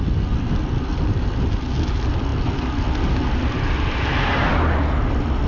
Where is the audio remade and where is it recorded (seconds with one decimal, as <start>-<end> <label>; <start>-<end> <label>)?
0.0-5.5 recorded